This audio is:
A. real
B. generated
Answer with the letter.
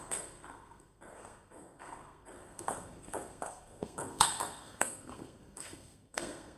B